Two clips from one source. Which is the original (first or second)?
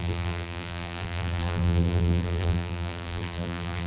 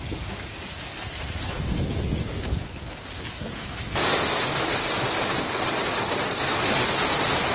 second